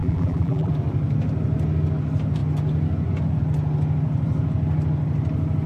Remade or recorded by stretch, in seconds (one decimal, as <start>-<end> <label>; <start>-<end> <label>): 0.0-0.7 remade; 0.7-5.7 recorded